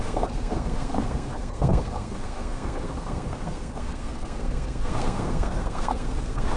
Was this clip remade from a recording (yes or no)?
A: yes